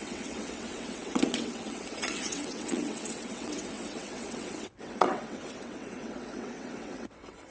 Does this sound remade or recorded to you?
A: remade